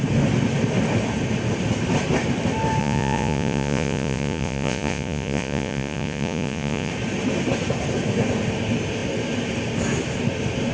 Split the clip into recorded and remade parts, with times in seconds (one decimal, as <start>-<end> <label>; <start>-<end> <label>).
0.0-2.8 recorded; 2.8-6.9 remade; 6.9-10.7 recorded